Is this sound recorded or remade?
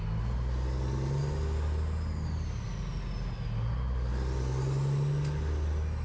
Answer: recorded